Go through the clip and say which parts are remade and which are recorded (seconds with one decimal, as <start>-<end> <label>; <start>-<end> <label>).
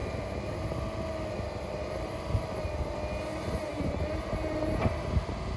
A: 0.0-5.6 recorded